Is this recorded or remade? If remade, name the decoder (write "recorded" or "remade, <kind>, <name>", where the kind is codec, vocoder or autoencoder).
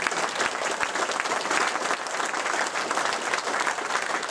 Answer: recorded